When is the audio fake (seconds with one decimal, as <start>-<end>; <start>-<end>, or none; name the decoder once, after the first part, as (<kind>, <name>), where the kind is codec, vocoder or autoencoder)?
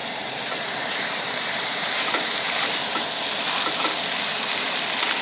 0.0-3.1 (vocoder, BigVGAN v2)